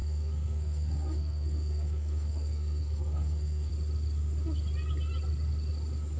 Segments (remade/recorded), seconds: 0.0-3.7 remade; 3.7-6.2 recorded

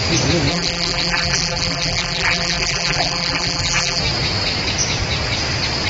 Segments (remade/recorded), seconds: 0.0-0.5 recorded; 0.5-4.0 remade; 4.0-5.9 recorded

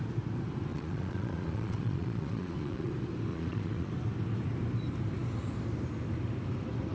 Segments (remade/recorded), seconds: 0.0-0.7 recorded; 0.7-2.9 remade; 2.9-3.3 recorded; 3.3-3.9 remade; 3.9-6.9 recorded

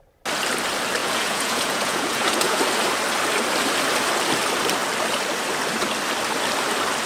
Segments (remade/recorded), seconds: 0.0-1.0 recorded; 1.0-2.6 remade; 2.6-7.1 recorded

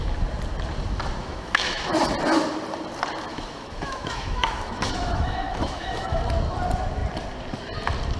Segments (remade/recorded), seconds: 0.0-1.2 recorded; 1.2-2.0 remade; 2.0-3.3 recorded; 3.3-6.2 remade; 6.2-8.2 recorded

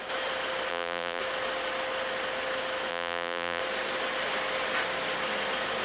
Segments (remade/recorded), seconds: 0.0-0.7 recorded; 0.7-1.2 remade; 1.2-2.9 recorded; 2.9-3.6 remade; 3.6-5.8 recorded

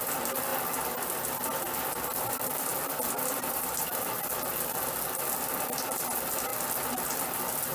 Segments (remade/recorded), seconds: 0.0-7.7 recorded